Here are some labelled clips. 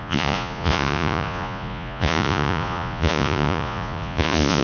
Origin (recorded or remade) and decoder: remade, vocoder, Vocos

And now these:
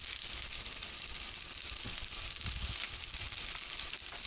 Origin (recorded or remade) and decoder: recorded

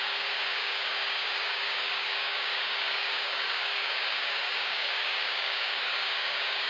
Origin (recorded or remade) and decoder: remade, codec, DAC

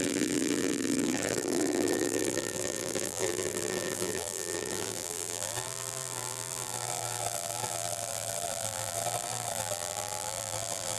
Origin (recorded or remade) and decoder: remade, vocoder, BigVGAN v2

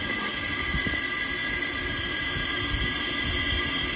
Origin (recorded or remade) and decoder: recorded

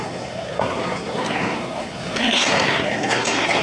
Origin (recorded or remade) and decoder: remade, codec, SNAC